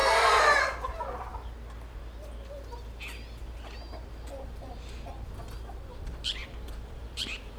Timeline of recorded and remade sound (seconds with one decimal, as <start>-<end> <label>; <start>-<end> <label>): 0.0-0.6 recorded; 0.6-1.3 remade; 1.3-5.9 recorded; 5.9-7.6 remade